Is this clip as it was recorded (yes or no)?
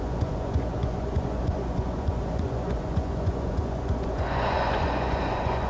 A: no